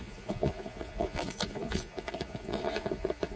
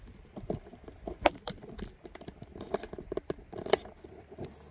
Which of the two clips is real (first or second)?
second